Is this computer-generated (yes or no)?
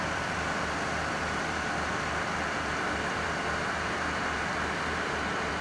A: yes